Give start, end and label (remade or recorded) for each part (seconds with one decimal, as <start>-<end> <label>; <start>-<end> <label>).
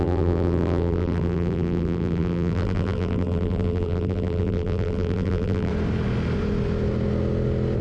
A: 0.0-5.7 remade; 5.7-7.8 recorded